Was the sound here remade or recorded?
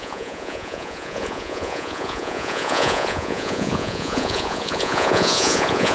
remade